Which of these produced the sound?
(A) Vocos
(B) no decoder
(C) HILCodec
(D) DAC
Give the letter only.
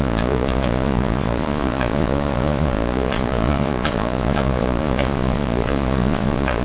A